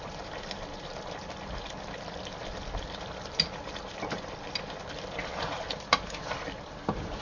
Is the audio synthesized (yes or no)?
yes